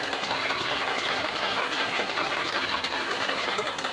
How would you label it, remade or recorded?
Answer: remade